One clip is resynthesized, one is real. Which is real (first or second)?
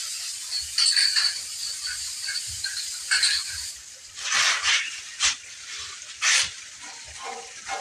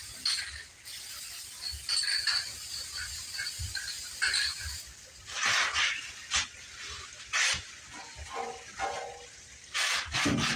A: second